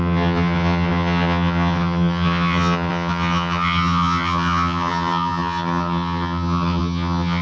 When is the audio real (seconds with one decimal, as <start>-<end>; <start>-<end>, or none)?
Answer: none